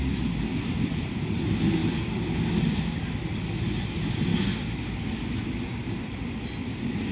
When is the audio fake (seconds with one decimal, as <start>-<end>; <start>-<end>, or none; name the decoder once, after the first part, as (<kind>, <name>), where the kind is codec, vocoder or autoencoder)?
none